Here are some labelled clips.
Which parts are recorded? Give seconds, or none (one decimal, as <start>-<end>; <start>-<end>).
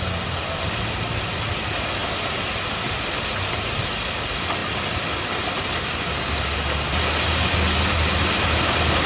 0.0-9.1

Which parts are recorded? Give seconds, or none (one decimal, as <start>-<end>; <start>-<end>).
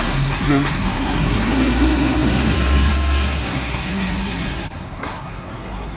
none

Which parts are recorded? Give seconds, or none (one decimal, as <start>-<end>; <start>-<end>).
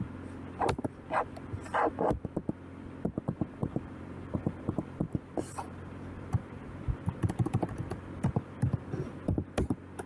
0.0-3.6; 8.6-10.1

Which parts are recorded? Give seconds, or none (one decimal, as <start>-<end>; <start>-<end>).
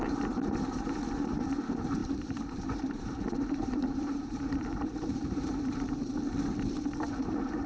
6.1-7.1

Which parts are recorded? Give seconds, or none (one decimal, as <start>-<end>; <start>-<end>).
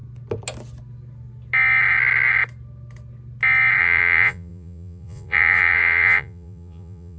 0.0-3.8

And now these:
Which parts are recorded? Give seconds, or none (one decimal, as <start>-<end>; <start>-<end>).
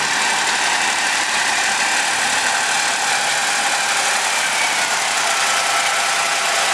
0.0-0.7; 1.5-6.7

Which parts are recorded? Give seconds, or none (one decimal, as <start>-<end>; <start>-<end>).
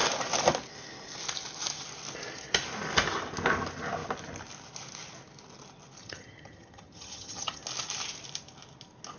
0.0-6.0; 7.6-9.2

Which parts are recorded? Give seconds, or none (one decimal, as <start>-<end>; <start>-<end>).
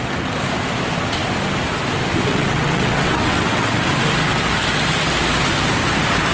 0.0-2.3; 3.8-6.3